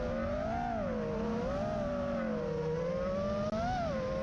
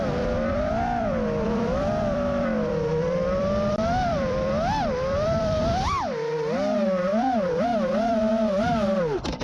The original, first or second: first